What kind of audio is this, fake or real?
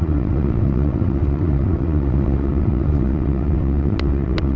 fake